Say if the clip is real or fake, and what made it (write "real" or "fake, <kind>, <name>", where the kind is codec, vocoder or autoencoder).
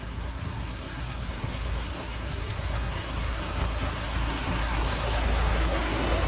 fake, codec, SNAC